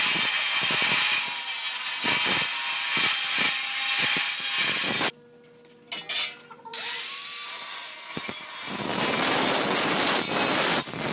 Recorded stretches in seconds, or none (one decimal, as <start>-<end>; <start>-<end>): 0.0-11.1